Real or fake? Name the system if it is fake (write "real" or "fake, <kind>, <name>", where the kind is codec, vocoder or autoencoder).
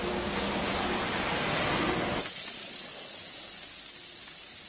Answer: real